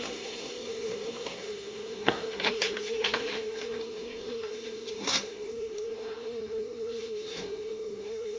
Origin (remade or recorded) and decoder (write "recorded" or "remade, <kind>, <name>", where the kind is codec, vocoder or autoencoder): remade, codec, SNAC